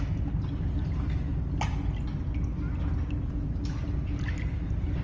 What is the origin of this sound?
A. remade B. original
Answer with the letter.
B